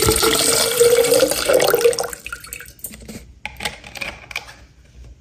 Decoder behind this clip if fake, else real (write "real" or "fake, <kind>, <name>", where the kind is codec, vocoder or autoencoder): real